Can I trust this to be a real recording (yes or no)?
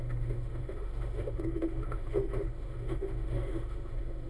no